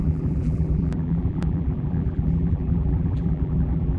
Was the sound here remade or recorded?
remade